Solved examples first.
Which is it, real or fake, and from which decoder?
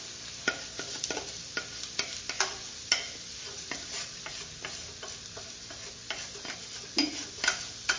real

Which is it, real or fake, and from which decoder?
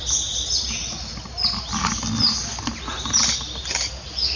real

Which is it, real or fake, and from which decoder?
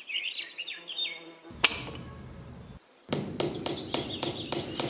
real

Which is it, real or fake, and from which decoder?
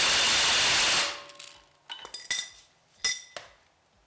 real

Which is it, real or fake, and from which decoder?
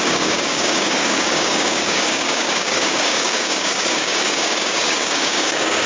fake, codec, DAC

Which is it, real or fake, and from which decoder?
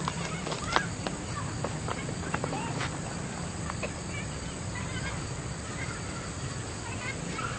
real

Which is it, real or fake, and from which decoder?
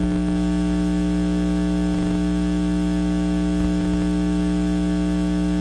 real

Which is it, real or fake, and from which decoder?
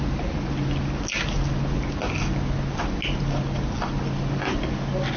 real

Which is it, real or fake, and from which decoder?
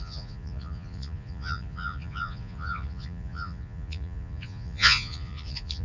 fake, vocoder, Vocos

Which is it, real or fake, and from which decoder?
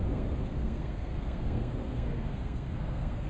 fake, codec, SNAC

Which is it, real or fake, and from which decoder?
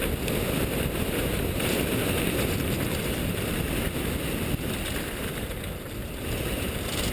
real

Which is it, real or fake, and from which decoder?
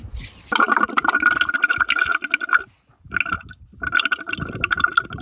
real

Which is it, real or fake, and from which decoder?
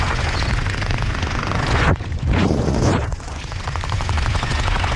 fake, vocoder, Vocos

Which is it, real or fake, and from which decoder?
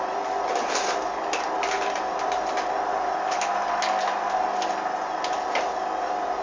real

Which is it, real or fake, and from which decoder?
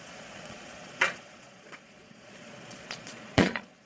fake, vocoder, Vocos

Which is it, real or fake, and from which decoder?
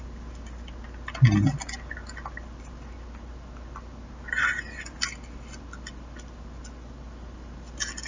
real